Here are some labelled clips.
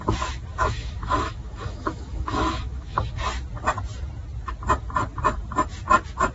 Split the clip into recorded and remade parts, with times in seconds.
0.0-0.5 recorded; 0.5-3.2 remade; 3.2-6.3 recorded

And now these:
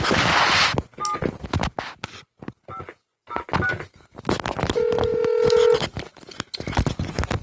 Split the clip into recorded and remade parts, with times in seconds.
0.0-7.4 recorded

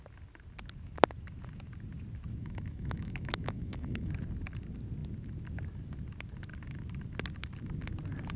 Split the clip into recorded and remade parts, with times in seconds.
0.0-2.4 recorded; 2.4-4.1 remade; 4.1-8.4 recorded

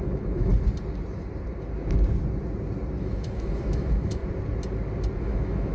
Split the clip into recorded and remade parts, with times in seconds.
0.0-0.5 remade; 0.5-3.0 recorded; 3.0-4.2 remade; 4.2-5.2 recorded; 5.2-5.7 remade

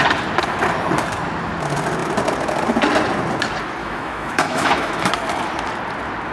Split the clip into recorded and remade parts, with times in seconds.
0.0-3.8 recorded; 3.8-5.1 remade; 5.1-6.3 recorded

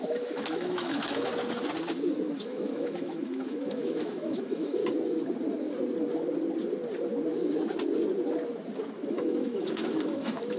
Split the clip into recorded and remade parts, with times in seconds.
0.0-1.3 remade; 1.3-2.3 recorded; 2.3-4.8 remade; 4.8-9.1 recorded; 9.1-10.6 remade

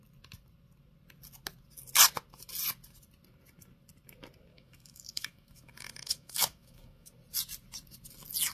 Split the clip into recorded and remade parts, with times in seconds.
0.0-4.5 recorded; 4.5-7.1 remade; 7.1-8.5 recorded